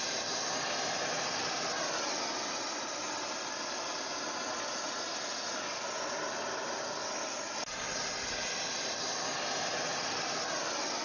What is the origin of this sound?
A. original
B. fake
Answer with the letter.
A